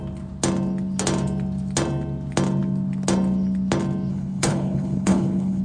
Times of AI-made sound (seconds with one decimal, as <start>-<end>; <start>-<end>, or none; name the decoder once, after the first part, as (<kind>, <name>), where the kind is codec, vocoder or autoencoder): 4.1-5.6 (codec, HILCodec)